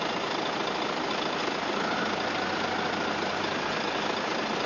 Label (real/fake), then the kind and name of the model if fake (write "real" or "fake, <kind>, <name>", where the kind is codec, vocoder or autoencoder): real